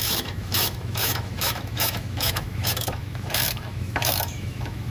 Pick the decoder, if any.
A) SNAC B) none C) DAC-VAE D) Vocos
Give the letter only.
C